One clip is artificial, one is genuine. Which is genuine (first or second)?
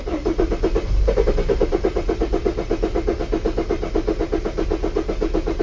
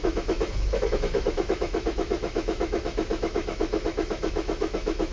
first